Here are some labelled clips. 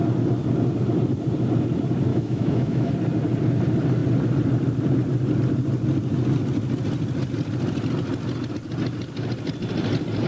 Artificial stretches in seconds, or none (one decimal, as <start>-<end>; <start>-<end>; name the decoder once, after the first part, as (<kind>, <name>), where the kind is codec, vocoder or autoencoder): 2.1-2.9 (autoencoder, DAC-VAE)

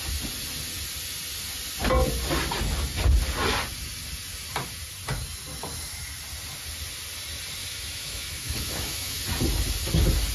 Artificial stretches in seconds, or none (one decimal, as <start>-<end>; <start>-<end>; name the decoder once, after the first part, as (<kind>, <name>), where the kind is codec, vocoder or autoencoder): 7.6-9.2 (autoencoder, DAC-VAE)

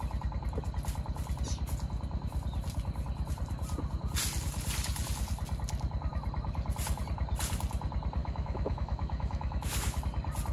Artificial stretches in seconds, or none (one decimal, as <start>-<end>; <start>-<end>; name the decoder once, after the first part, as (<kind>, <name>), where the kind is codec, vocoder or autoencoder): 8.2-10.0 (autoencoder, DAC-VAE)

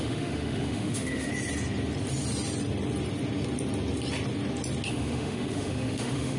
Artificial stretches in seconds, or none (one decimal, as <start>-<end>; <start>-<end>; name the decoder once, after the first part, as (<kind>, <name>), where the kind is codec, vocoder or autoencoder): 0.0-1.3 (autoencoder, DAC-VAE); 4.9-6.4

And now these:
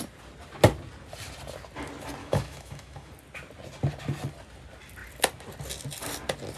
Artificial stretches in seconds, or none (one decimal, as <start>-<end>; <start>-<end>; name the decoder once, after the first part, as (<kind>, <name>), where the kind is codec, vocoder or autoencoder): 2.2-3.1 (autoencoder, DAC-VAE)

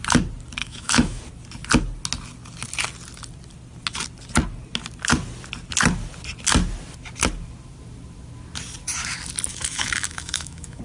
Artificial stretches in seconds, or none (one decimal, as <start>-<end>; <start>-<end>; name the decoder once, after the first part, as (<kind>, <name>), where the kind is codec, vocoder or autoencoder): 0.6-1.2 (autoencoder, DAC-VAE); 9.5-10.8

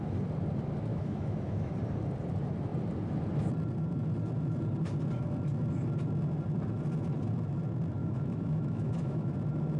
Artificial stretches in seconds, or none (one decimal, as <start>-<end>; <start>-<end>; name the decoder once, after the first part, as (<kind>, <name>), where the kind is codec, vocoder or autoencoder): 0.9-1.7 (autoencoder, DAC-VAE); 8.0-9.3

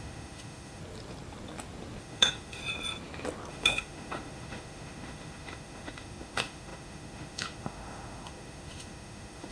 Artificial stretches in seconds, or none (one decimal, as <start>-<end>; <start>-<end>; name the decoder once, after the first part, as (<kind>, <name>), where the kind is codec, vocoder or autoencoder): 0.0-0.8 (autoencoder, DAC-VAE); 2.0-2.6; 3.5-9.5